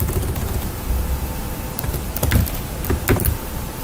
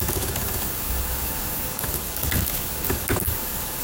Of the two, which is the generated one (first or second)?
second